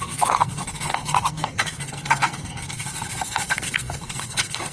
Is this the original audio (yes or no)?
no